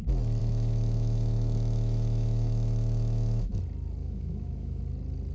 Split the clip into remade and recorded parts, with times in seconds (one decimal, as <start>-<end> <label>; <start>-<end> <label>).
0.0-0.4 recorded; 0.4-3.6 remade; 3.6-4.0 recorded; 4.0-4.8 remade; 4.8-5.3 recorded